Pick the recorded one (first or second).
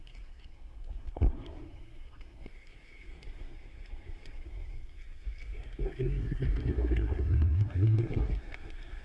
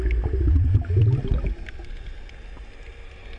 second